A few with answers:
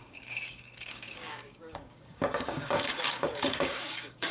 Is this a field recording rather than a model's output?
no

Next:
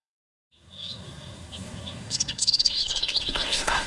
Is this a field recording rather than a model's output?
no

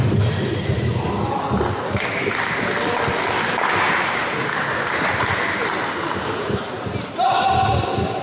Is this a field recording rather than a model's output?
yes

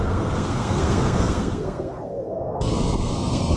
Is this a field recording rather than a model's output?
no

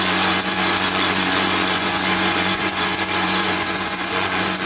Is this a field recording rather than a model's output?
no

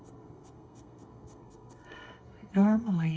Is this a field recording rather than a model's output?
no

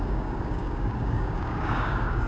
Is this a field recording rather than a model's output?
no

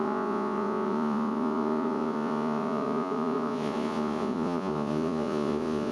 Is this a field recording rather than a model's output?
no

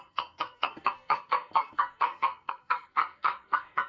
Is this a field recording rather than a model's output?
no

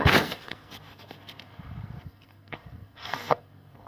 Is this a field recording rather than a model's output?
no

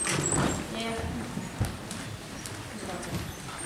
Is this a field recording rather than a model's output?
yes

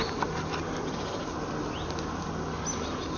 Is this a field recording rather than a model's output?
yes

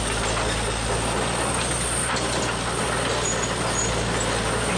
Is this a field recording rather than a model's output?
yes